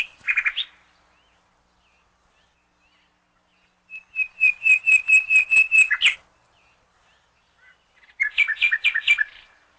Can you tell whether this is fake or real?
real